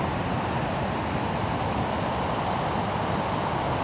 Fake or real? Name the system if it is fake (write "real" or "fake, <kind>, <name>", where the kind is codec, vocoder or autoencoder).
real